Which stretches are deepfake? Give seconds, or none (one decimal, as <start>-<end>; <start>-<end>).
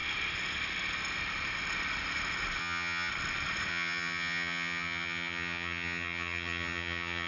2.6-3.1; 3.7-7.3